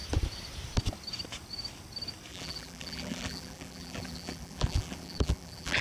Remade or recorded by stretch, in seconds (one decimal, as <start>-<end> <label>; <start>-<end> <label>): 0.0-2.3 recorded; 2.3-5.8 remade